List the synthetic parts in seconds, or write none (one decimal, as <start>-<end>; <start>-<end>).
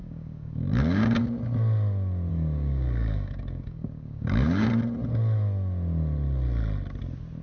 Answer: 0.0-1.2; 2.3-4.7